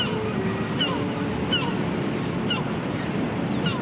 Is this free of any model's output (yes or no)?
yes